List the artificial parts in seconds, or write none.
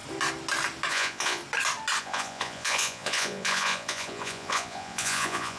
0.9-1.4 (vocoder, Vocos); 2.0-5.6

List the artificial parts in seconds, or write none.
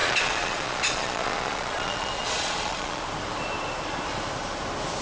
0.0-3.0 (vocoder, Vocos)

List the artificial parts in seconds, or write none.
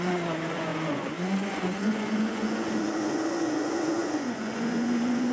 0.0-5.3 (vocoder, Vocos)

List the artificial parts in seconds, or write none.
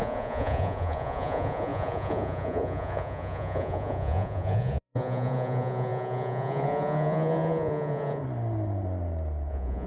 0.0-8.2 (vocoder, Vocos); 9.5-9.9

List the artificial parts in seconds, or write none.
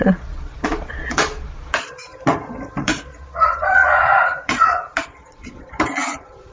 0.0-2.1 (vocoder, Vocos); 2.8-6.5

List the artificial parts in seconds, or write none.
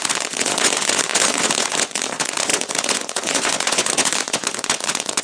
0.0-5.2 (vocoder, Vocos)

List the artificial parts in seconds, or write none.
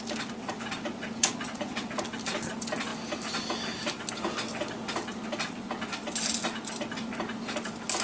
1.2-1.9 (vocoder, Vocos)